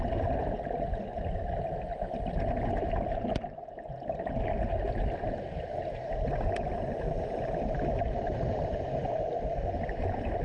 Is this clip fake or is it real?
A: real